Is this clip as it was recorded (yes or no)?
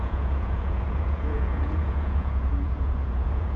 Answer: no